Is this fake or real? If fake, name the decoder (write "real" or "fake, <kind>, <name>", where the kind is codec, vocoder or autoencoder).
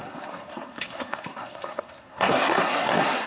fake, codec, SNAC